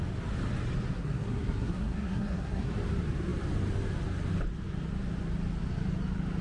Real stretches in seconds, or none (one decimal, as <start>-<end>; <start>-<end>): 0.0-0.9; 2.7-6.4